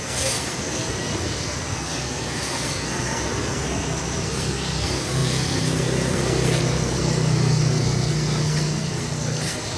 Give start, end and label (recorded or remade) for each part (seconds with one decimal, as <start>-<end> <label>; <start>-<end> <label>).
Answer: 0.0-9.8 remade

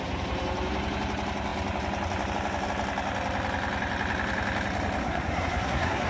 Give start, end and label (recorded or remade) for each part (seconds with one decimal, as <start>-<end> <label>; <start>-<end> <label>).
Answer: 0.0-5.0 recorded; 5.0-6.1 remade

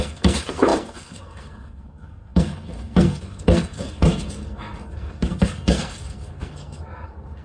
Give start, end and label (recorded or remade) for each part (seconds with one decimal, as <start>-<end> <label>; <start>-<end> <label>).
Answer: 0.0-7.4 remade

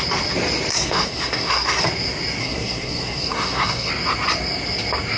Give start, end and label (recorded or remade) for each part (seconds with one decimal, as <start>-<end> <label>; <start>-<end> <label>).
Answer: 0.0-0.7 recorded; 0.7-1.8 remade; 1.8-2.4 recorded; 2.4-3.9 remade; 3.9-5.2 recorded

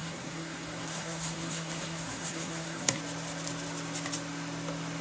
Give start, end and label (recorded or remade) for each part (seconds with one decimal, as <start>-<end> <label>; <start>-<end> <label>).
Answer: 0.0-3.0 remade; 3.0-5.0 recorded

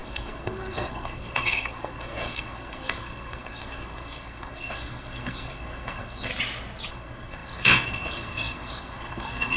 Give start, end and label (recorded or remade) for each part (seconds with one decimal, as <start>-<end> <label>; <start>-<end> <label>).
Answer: 0.0-6.3 remade; 6.3-6.9 recorded; 6.9-9.6 remade